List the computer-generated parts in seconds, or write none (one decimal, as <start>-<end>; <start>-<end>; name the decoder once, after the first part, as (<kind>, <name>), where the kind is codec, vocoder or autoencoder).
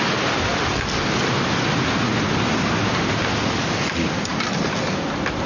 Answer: none